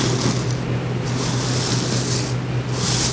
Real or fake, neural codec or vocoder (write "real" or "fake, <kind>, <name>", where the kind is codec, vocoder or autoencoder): real